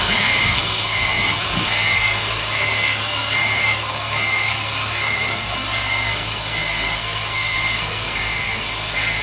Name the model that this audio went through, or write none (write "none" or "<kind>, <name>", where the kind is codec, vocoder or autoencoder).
codec, SNAC